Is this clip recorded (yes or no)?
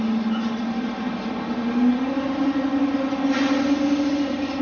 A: yes